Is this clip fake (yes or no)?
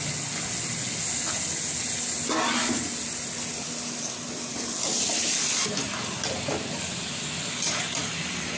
no